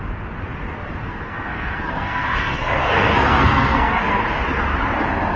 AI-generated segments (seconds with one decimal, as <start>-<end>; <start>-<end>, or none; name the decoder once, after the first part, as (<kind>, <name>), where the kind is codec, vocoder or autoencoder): 1.0-4.2 (codec, SNAC)